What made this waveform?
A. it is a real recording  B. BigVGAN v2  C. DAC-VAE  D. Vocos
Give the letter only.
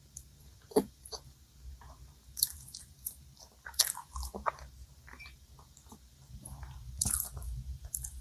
B